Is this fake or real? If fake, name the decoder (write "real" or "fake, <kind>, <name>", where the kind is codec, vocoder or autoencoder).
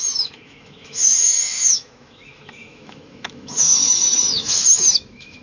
fake, autoencoder, DAC-VAE